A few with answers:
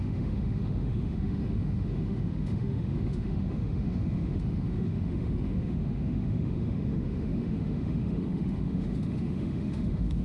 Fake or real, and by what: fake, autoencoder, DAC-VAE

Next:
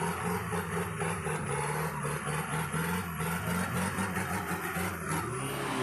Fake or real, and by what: real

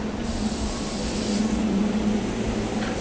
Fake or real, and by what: real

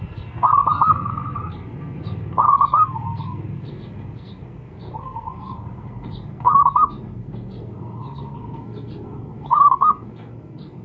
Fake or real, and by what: fake, codec, SNAC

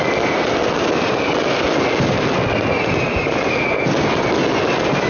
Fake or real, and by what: real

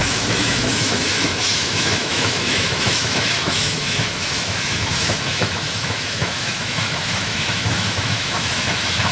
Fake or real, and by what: fake, autoencoder, DAC-VAE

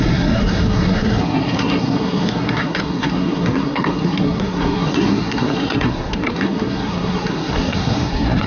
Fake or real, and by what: fake, codec, SNAC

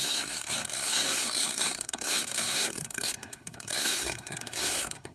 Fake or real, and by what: fake, codec, SNAC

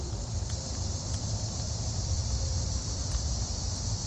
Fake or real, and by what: fake, vocoder, BigVGAN v2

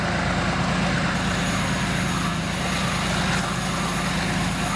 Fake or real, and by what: real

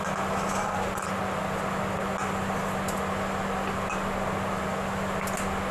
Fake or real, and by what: real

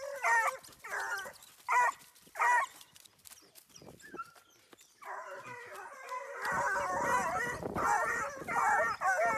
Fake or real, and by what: real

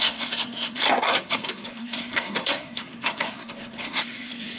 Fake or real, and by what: fake, codec, SNAC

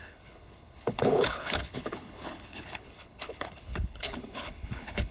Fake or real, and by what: fake, codec, HILCodec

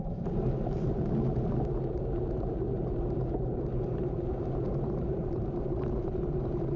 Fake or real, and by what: fake, vocoder, BigVGAN v2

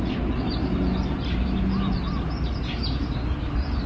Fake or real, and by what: real